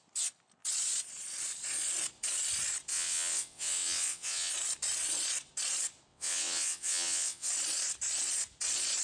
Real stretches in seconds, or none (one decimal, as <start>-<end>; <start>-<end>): 0.0-2.9; 4.5-6.1; 7.5-9.0